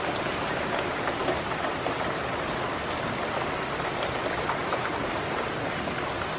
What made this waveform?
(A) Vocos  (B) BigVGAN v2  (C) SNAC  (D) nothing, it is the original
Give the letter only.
D